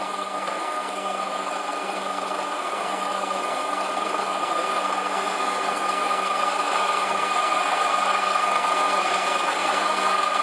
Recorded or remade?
remade